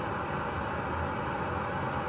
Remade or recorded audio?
recorded